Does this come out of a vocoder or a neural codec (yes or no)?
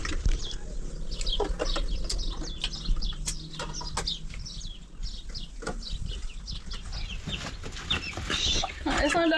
no